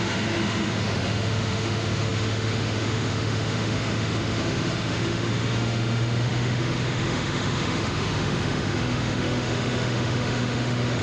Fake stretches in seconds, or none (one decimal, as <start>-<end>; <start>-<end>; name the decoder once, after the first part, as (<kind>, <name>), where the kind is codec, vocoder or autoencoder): 0.0-11.0 (autoencoder, DAC-VAE)